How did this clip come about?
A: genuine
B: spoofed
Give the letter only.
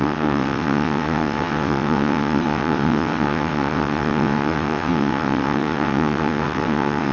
B